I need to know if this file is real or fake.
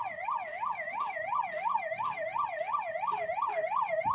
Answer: real